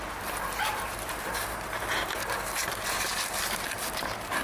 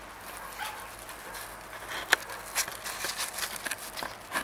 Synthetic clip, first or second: first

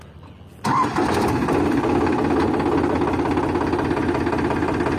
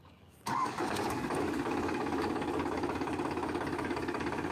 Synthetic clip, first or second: second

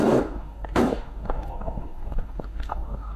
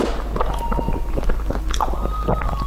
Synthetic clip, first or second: first